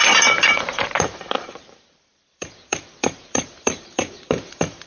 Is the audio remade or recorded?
remade